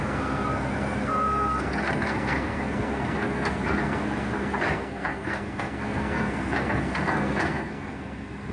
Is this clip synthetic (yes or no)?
yes